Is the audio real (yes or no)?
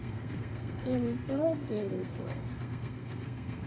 no